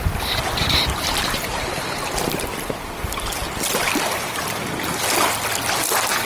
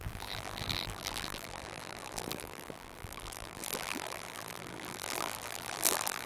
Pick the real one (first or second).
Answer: first